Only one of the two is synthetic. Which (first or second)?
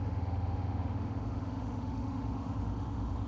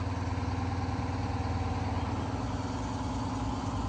first